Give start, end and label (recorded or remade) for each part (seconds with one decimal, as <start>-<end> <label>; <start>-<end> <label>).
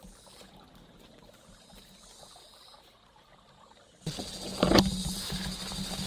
0.0-6.1 recorded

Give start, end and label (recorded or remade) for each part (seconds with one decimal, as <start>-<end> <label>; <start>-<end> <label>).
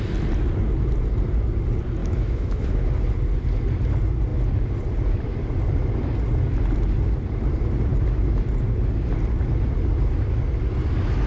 0.0-2.0 recorded; 2.0-2.9 remade; 2.9-11.3 recorded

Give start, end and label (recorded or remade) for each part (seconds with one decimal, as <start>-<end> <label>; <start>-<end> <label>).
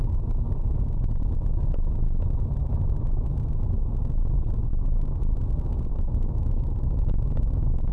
0.0-2.6 recorded; 2.6-3.3 remade; 3.3-4.7 recorded; 4.7-5.4 remade; 5.4-5.9 recorded; 5.9-7.9 remade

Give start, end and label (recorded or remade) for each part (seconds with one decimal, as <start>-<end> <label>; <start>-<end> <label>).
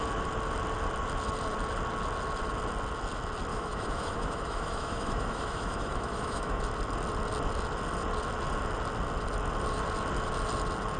0.0-3.5 recorded; 3.5-6.6 remade; 6.6-11.0 recorded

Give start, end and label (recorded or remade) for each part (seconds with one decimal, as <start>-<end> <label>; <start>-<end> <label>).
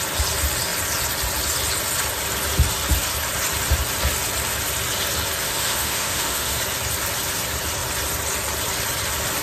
0.0-5.4 recorded; 5.4-6.6 remade; 6.6-9.4 recorded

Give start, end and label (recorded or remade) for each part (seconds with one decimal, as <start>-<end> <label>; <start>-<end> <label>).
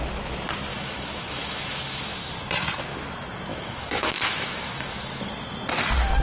0.0-0.7 recorded; 0.7-2.3 remade; 2.3-3.5 recorded; 3.5-5.3 remade; 5.3-6.2 recorded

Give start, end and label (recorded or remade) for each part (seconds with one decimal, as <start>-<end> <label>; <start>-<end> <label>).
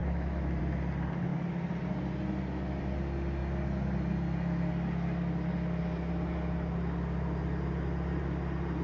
0.0-0.6 remade; 0.6-8.8 recorded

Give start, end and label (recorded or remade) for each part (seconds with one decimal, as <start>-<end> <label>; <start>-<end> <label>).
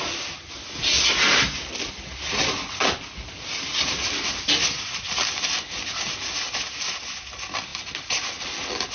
0.0-8.9 recorded